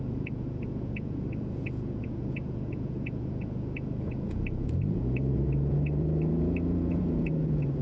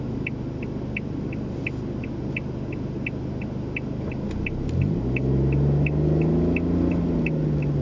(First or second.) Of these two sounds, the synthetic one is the first